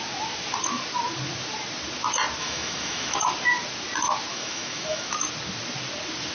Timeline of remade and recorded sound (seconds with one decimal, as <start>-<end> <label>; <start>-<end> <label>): 0.0-2.4 recorded; 2.4-3.2 remade; 3.2-4.3 recorded; 4.3-5.3 remade; 5.3-6.3 recorded